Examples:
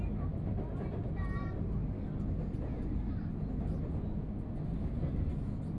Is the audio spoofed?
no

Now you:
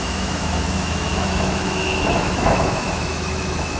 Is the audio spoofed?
yes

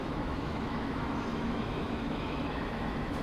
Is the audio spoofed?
yes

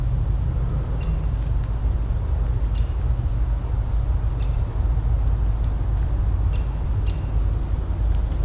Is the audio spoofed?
no